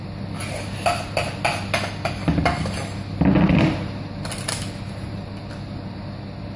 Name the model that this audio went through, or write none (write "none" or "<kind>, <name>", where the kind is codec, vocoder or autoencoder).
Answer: none